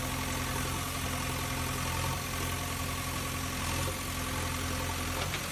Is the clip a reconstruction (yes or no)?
no